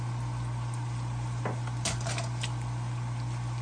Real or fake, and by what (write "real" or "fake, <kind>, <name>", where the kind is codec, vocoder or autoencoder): real